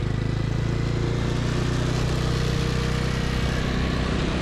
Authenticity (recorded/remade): recorded